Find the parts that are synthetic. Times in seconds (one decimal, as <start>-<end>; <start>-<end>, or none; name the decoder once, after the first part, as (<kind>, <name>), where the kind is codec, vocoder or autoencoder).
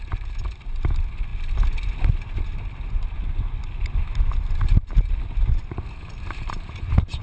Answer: none